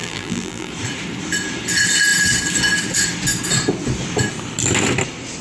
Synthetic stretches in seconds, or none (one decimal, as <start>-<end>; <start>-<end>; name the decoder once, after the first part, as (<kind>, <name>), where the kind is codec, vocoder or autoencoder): 0.0-0.7 (vocoder, BigVGAN v2)